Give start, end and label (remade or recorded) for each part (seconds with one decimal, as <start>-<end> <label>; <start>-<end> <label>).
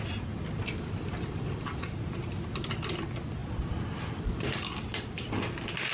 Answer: 0.0-5.9 recorded